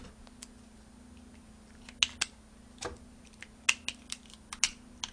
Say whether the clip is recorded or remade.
recorded